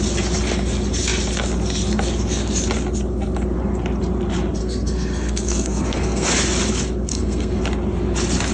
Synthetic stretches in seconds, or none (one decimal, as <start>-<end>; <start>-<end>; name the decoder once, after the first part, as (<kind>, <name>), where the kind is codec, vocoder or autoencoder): 4.6-6.3 (codec, SNAC); 7.1-7.6